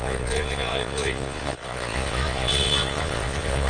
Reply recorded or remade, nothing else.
remade